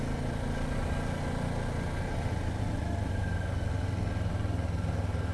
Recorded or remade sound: recorded